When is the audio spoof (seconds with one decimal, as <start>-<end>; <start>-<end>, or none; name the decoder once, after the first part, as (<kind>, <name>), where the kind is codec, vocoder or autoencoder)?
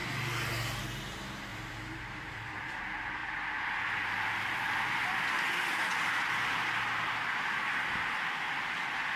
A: 1.5-2.8 (vocoder, BigVGAN v2)